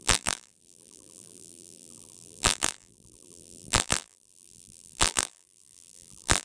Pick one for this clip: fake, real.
fake